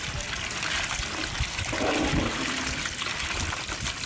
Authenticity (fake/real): real